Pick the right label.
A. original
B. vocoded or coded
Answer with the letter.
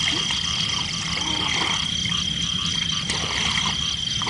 B